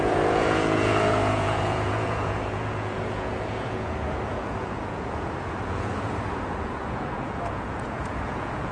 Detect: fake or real fake